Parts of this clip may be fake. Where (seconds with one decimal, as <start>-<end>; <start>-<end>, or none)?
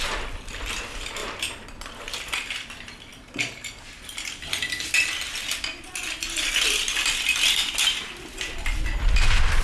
1.2-2.5